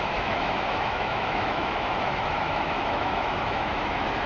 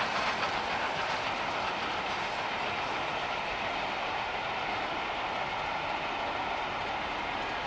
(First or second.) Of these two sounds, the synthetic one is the first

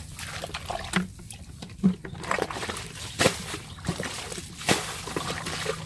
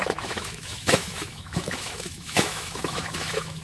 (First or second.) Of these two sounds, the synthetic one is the second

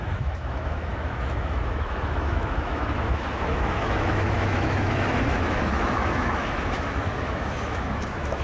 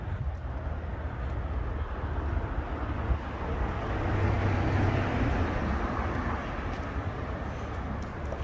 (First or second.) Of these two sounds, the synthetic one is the first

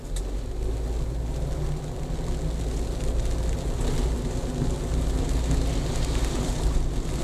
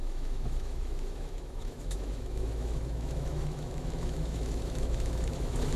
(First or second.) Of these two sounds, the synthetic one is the second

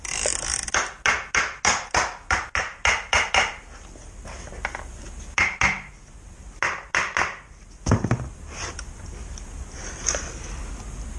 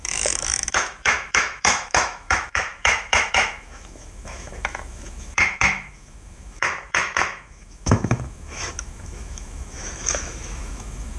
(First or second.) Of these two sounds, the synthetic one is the second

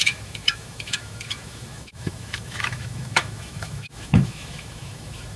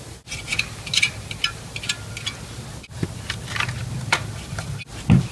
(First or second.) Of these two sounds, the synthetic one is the first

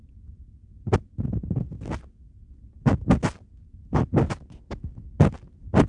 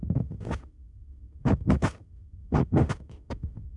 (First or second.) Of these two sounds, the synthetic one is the second